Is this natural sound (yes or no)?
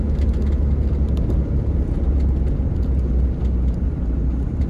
yes